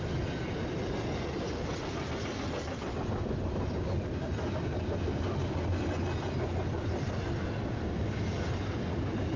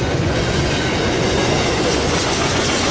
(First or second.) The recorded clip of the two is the first